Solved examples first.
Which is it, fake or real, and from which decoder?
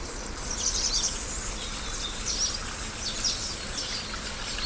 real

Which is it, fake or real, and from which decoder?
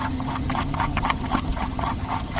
fake, vocoder, HiFi-GAN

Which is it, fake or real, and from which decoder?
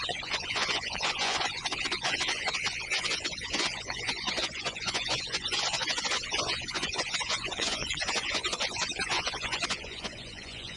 fake, vocoder, Vocos